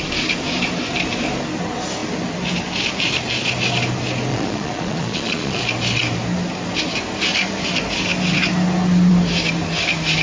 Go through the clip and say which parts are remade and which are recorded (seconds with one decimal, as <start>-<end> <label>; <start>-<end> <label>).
0.0-4.3 recorded; 4.3-5.6 remade; 5.6-10.2 recorded